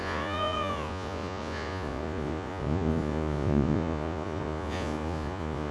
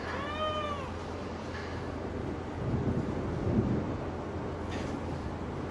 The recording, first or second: second